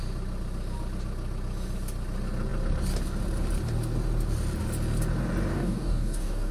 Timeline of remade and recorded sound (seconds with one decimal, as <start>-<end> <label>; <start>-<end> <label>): 0.0-5.5 recorded; 5.5-6.5 remade